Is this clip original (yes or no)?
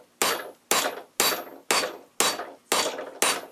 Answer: yes